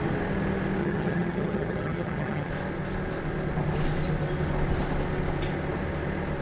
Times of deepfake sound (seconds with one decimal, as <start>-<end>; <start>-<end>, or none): 0.8-2.5